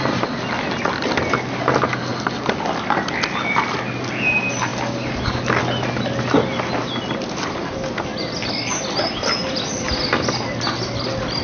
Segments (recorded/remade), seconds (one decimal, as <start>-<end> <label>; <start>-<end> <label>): 0.0-11.4 recorded